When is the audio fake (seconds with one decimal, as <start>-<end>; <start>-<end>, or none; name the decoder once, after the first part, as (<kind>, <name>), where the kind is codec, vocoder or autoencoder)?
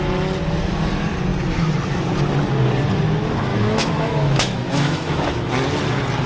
3.5-5.5 (autoencoder, DAC-VAE)